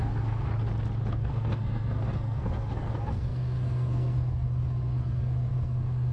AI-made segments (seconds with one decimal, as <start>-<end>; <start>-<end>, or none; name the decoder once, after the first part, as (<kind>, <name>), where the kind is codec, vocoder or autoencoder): 0.0-0.5 (codec, SNAC); 1.1-6.1